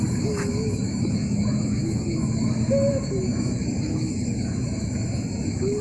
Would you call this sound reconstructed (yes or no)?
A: yes